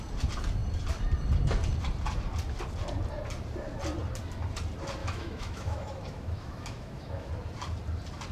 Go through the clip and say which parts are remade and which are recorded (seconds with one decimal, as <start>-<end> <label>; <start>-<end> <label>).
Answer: 0.0-5.0 recorded; 5.0-7.3 remade; 7.3-8.3 recorded